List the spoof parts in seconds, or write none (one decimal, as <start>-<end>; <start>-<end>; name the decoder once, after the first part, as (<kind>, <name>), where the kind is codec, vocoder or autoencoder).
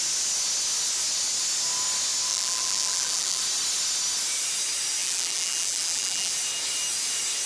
2.3-3.4 (vocoder, BigVGAN v2); 5.0-6.3